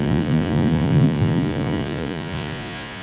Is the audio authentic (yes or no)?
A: no